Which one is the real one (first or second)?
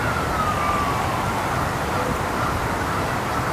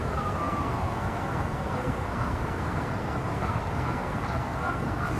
first